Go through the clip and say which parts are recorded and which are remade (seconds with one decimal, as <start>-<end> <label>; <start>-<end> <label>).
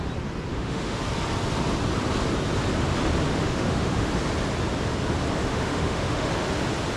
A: 0.0-0.5 recorded; 0.5-1.0 remade; 1.0-3.3 recorded; 3.3-4.1 remade; 4.1-5.4 recorded; 5.4-6.3 remade; 6.3-7.0 recorded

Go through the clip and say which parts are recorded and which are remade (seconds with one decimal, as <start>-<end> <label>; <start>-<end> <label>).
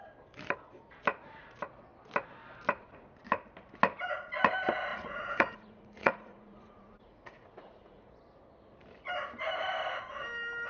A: 0.0-4.9 recorded; 4.9-8.1 remade; 8.1-10.7 recorded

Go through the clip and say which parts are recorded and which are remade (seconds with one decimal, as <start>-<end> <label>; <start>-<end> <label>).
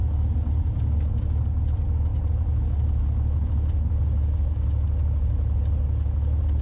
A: 0.0-6.6 recorded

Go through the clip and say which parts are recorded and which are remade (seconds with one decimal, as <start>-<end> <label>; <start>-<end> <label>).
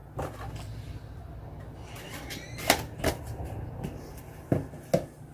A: 0.0-5.3 recorded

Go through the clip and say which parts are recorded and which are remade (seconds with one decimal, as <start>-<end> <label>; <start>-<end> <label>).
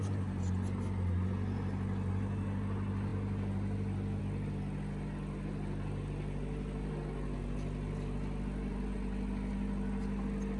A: 0.0-10.6 recorded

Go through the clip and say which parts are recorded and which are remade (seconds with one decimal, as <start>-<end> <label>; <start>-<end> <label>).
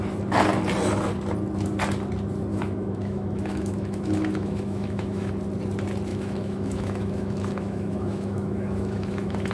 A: 0.0-2.5 recorded; 2.5-5.3 remade; 5.3-6.1 recorded; 6.1-9.5 remade